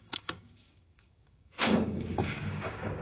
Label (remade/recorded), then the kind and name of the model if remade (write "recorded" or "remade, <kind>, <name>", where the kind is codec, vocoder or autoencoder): remade, codec, DAC